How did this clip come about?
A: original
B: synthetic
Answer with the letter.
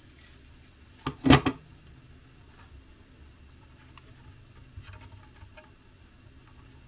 A